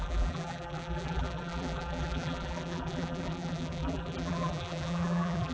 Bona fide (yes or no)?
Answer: no